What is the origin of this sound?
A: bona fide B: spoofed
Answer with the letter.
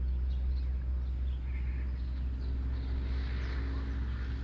A